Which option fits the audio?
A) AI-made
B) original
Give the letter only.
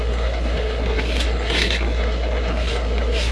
A